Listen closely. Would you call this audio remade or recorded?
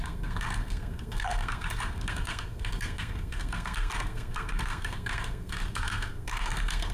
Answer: remade